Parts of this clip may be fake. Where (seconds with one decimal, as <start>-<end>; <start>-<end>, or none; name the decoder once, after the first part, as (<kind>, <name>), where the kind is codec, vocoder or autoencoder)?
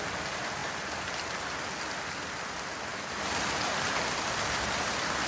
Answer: none